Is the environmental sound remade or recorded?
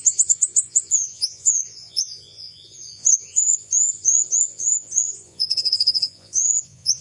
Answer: remade